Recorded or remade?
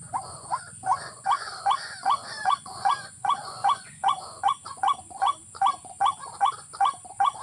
remade